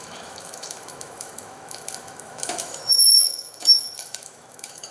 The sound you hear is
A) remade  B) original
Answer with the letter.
A